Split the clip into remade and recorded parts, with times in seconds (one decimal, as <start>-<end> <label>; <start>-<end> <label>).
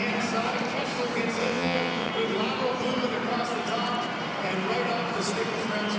0.0-1.4 recorded; 1.4-2.1 remade; 2.1-6.0 recorded